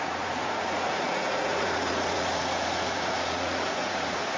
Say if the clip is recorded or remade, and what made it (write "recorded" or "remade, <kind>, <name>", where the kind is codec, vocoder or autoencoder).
remade, vocoder, Vocos